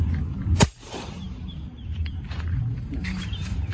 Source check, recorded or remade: remade